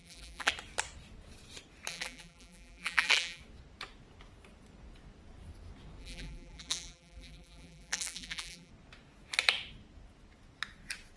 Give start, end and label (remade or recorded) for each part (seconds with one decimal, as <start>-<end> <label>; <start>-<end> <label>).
0.0-0.5 remade; 0.5-1.9 recorded; 1.9-3.4 remade; 3.4-6.0 recorded; 6.0-8.7 remade; 8.7-11.2 recorded